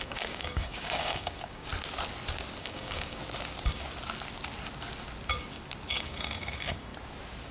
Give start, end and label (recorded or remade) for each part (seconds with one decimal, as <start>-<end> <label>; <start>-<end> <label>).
0.0-1.7 remade; 1.7-2.6 recorded; 2.6-3.2 remade; 3.2-5.9 recorded; 5.9-6.9 remade; 6.9-7.5 recorded